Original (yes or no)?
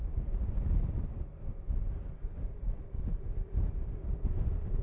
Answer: yes